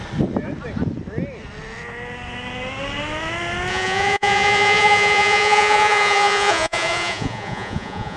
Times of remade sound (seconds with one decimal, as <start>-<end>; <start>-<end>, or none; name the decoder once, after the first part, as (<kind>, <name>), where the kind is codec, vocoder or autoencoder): 3.7-8.2 (vocoder, Vocos)